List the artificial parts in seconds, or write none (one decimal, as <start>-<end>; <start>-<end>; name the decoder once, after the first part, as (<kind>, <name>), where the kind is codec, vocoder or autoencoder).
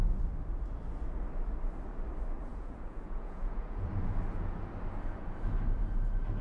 2.5-3.9 (vocoder, Vocos)